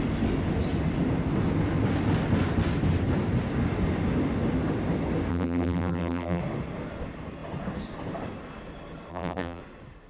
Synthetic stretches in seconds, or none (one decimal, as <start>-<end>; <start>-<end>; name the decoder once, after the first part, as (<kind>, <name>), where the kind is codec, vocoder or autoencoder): 5.3-6.4 (vocoder, BigVGAN v2); 9.1-9.6